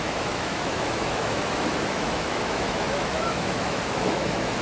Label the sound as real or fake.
fake